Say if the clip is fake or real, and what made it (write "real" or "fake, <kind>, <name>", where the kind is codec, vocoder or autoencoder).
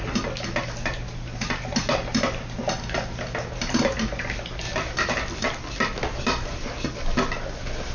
real